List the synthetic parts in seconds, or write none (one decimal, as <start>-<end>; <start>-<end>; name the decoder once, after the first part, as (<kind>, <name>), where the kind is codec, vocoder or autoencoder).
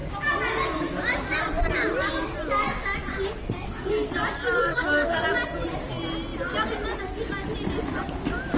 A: 3.4-4.1 (codec, SNAC); 4.6-5.2